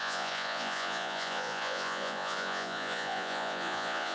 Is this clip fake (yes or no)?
yes